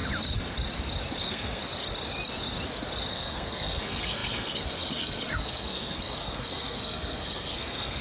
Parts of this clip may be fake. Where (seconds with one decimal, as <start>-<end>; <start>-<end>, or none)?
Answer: 1.2-1.6; 3.1-8.0